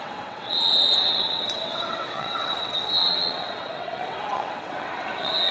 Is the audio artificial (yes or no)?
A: yes